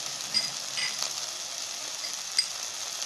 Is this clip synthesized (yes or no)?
no